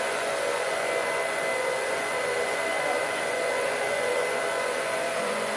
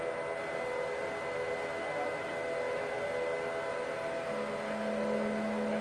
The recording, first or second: second